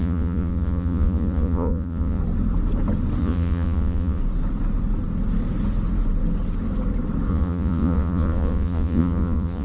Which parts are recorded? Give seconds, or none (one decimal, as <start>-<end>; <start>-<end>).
2.2-3.2; 4.2-7.3